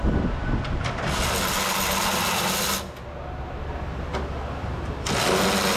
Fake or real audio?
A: real